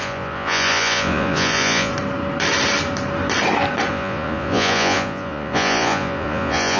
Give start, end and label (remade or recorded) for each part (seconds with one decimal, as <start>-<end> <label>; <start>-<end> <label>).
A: 0.0-1.9 remade; 1.9-3.9 recorded; 3.9-6.8 remade